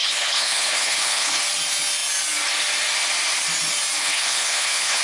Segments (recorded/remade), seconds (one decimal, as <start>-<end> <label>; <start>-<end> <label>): 0.0-1.4 remade; 1.4-4.0 recorded; 4.0-5.0 remade